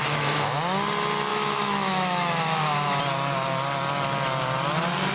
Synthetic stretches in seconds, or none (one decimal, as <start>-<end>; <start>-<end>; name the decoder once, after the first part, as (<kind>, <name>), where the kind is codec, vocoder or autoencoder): 0.0-0.6 (autoencoder, DAC-VAE); 1.3-3.0